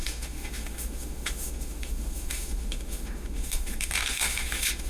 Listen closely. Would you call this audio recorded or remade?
remade